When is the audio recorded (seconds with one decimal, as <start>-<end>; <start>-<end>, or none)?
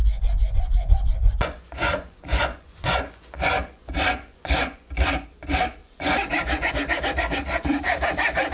4.9-5.8; 6.7-8.5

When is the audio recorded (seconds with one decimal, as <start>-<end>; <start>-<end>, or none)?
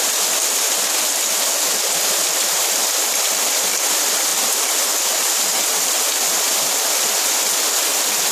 0.0-8.3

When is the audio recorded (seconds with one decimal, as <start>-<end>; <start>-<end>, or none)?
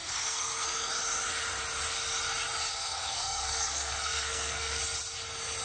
0.9-2.7; 4.8-5.6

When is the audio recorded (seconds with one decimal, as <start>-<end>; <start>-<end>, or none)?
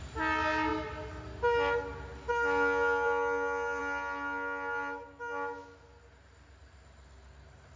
0.0-7.8